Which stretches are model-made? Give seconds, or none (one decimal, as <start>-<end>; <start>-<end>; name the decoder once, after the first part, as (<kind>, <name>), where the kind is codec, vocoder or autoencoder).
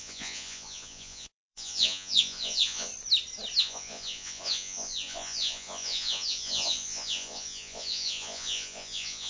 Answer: 0.0-2.9 (vocoder, Vocos); 3.6-9.3